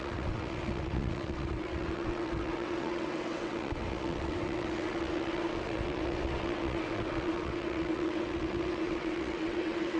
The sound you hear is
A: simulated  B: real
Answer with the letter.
A